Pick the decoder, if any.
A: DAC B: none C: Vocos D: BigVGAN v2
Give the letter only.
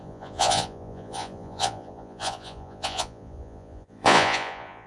C